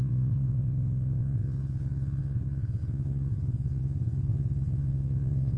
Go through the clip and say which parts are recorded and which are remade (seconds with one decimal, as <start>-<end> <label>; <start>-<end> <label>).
0.0-5.6 remade